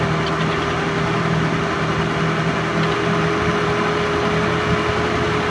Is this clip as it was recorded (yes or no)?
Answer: yes